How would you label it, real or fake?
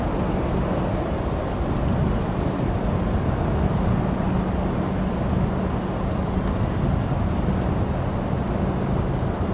real